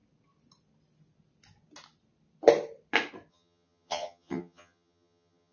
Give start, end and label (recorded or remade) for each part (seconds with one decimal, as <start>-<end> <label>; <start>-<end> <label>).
0.0-3.3 recorded; 3.3-5.5 remade